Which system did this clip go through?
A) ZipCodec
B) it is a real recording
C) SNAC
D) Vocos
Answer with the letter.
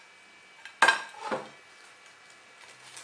B